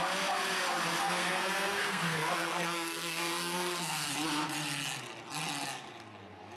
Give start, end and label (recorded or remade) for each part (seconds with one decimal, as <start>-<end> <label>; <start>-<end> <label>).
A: 0.0-1.0 recorded; 1.0-4.1 remade; 4.1-6.6 recorded